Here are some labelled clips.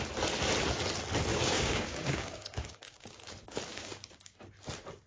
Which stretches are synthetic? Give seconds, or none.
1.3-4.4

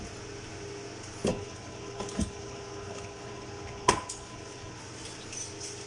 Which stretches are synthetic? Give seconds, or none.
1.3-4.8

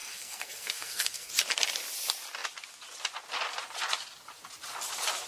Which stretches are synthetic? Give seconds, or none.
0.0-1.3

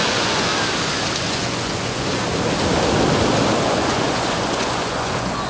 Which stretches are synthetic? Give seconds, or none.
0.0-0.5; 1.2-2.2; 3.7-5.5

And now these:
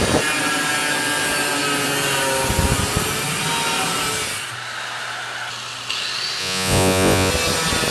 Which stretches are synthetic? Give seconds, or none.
6.4-7.3

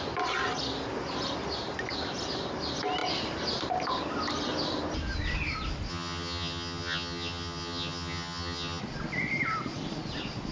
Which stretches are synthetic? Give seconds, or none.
5.9-8.8